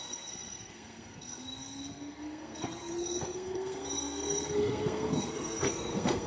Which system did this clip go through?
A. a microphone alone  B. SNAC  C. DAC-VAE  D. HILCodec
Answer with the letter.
B